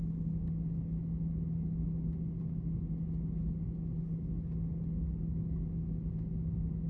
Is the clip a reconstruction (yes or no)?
no